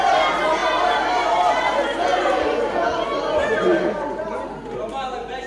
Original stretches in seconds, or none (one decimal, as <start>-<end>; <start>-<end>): 0.0-5.5